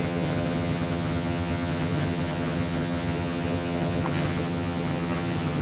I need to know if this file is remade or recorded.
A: remade